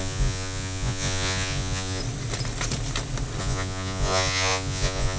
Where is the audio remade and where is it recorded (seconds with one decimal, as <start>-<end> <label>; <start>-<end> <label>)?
0.0-2.0 remade; 2.0-3.4 recorded; 3.4-5.2 remade